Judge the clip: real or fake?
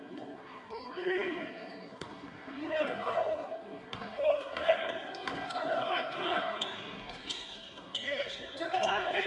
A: fake